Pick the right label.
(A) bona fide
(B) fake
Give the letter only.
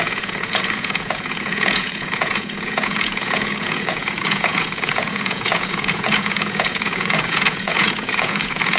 B